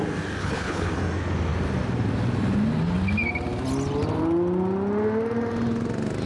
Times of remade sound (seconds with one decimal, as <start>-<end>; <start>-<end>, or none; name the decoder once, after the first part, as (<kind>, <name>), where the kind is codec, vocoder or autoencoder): 0.4-0.9 (codec, HILCodec)